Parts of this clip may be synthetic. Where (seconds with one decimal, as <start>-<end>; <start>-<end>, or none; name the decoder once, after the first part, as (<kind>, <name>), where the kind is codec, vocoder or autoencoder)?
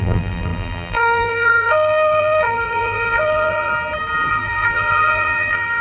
0.0-3.7 (vocoder, BigVGAN v2); 4.3-5.8